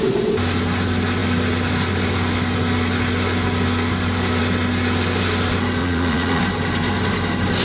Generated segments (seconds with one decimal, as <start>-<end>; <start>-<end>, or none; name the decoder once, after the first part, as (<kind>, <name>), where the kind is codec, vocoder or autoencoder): 5.8-6.4 (vocoder, Vocos)